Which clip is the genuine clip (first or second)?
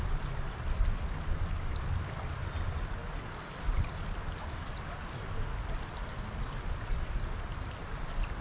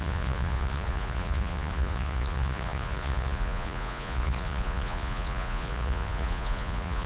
first